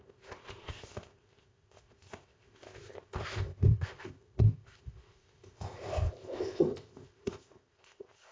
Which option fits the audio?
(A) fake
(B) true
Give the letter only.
A